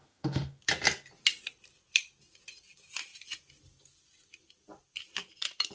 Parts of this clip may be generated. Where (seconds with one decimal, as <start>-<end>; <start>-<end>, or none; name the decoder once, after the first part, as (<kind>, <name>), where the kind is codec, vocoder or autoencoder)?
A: 0.0-0.6 (autoencoder, DAC-VAE)